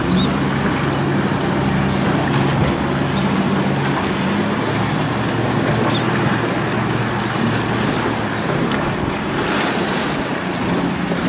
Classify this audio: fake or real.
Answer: real